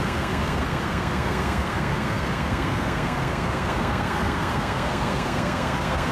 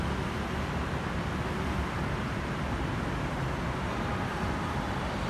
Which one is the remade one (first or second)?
first